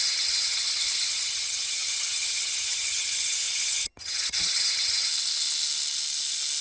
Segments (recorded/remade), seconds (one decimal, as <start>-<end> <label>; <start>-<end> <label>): 0.0-5.1 remade; 5.1-6.6 recorded